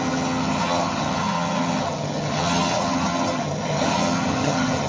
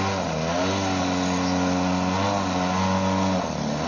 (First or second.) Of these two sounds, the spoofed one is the first